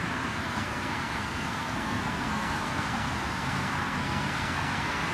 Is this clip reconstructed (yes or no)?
yes